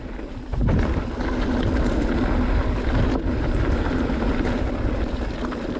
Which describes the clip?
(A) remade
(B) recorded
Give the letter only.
B